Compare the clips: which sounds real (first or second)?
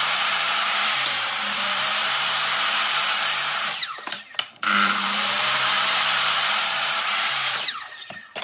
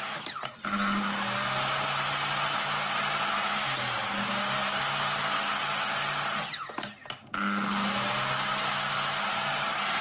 second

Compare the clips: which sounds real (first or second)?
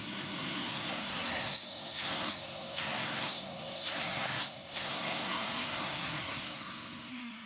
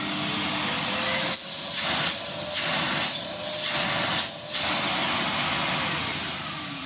second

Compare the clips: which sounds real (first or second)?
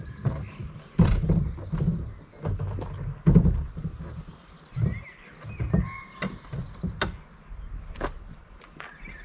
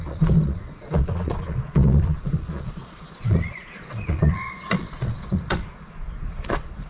first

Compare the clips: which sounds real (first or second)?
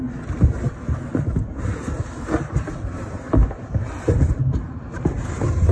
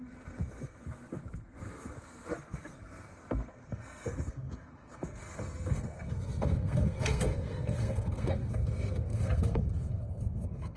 first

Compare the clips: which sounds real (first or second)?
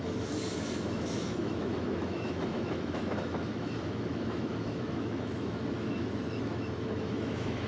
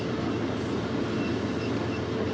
second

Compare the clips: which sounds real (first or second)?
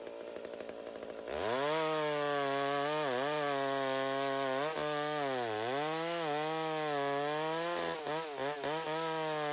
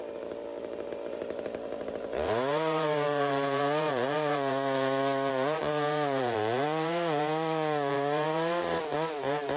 first